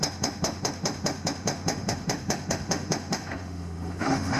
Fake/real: fake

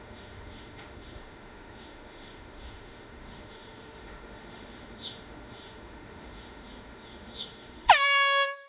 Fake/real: fake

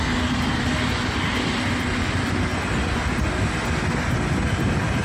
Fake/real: real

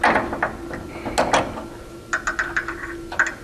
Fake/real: real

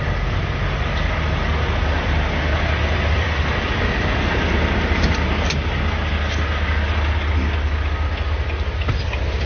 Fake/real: real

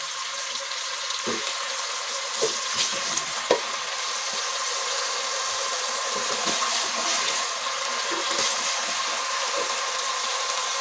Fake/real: real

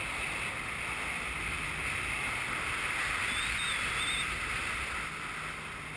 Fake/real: real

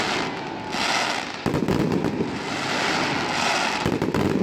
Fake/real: real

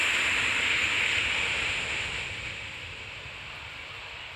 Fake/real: real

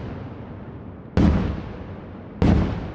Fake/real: real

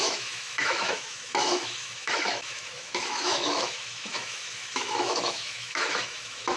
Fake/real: fake